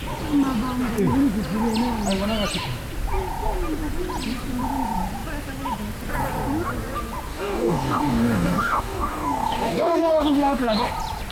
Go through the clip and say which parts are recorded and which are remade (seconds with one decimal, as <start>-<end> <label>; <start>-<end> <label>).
0.0-7.3 recorded; 7.3-10.9 remade; 10.9-11.3 recorded